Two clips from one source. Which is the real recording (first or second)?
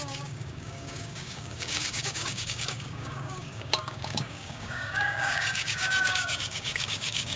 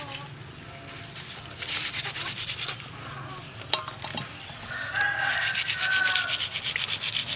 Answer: second